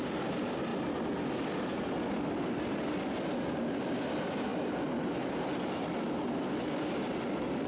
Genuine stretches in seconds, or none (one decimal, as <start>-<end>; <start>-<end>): 0.0-7.7